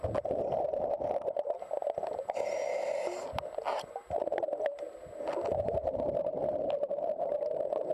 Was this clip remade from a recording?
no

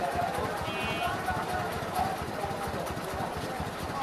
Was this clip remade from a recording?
no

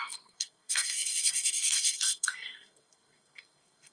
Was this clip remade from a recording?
yes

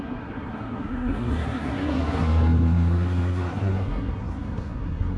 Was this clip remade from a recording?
yes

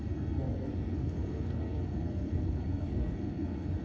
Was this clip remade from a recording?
yes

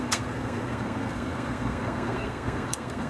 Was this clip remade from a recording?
yes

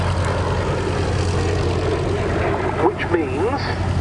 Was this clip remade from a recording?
no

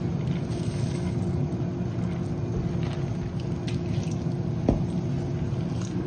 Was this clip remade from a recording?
no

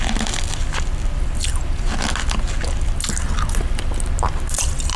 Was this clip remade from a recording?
no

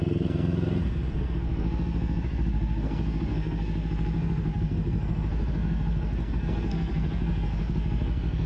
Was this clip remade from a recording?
yes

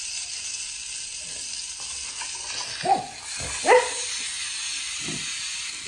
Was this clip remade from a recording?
no